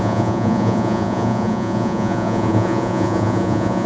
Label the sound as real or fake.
fake